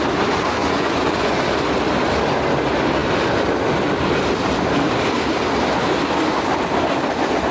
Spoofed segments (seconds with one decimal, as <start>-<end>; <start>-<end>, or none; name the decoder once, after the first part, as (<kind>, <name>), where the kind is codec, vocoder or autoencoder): 0.6-1.4 (vocoder, Vocos)